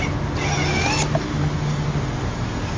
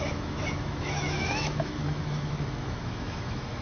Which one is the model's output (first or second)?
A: second